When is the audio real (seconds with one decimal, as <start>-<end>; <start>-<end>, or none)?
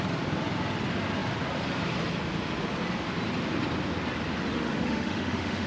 0.0-4.5